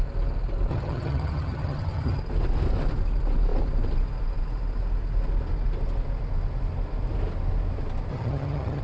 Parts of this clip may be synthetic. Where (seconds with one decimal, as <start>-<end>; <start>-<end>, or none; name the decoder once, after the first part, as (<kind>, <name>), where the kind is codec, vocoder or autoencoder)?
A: 0.7-2.2 (vocoder, HiFi-GAN); 8.1-8.8